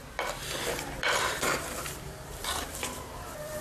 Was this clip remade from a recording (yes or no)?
yes